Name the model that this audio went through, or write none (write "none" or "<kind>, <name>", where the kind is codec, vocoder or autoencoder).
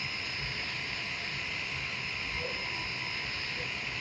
none